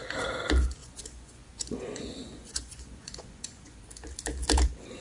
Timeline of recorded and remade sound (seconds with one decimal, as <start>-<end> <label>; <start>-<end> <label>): 0.0-0.8 recorded; 0.8-3.8 remade; 3.8-5.0 recorded